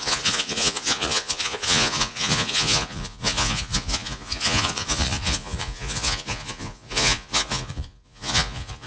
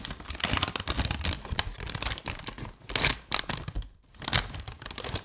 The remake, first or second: first